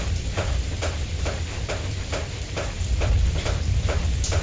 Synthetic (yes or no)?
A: yes